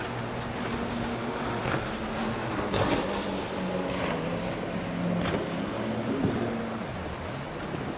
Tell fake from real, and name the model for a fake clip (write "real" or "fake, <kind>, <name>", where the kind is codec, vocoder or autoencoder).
real